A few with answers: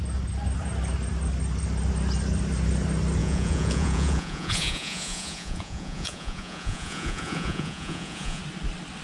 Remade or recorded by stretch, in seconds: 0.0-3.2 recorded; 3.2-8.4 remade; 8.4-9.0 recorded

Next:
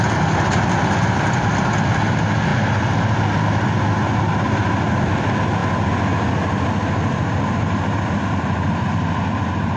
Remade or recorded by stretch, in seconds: 0.0-9.8 recorded

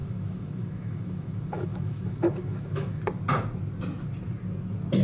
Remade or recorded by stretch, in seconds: 0.0-3.0 remade; 3.0-5.0 recorded

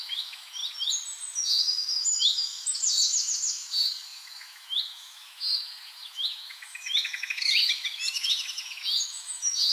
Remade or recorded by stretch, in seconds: 0.0-0.6 remade; 0.6-1.4 recorded; 1.4-9.7 remade

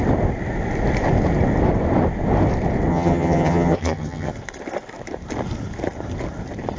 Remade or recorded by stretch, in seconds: 0.0-2.9 recorded; 2.9-4.3 remade; 4.3-6.8 recorded

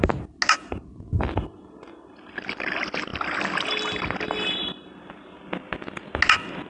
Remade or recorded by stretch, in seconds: 0.0-6.7 recorded

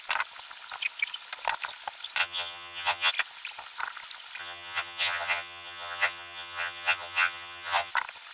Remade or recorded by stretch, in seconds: 0.0-2.2 recorded; 2.2-3.1 remade; 3.1-4.4 recorded; 4.4-7.9 remade; 7.9-8.3 recorded

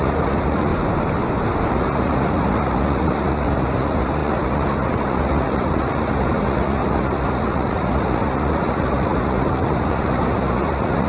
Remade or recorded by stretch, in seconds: 0.0-0.7 remade; 0.7-1.7 recorded; 1.7-11.1 remade